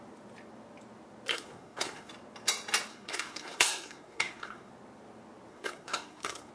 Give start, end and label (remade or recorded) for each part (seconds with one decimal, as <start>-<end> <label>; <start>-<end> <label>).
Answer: 0.0-1.3 recorded; 1.3-2.1 remade; 2.1-2.9 recorded; 2.9-4.7 remade; 4.7-5.5 recorded; 5.5-6.5 remade